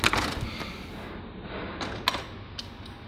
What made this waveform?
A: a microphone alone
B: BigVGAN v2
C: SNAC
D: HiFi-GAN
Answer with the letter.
A